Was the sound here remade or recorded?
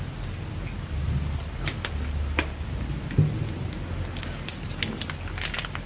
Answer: remade